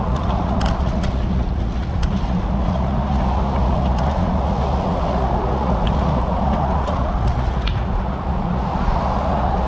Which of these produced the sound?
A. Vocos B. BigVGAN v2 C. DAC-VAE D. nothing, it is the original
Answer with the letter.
A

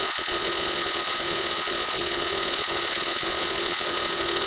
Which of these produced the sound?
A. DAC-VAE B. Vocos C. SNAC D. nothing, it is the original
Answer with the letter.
B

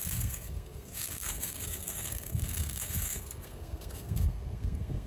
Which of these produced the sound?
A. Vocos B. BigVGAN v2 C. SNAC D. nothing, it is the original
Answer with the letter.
C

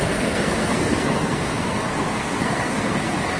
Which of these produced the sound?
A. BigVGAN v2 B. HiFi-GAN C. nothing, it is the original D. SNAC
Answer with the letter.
D